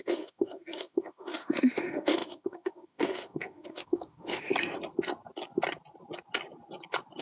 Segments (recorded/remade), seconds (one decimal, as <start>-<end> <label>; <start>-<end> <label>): 0.0-4.5 remade; 4.5-7.2 recorded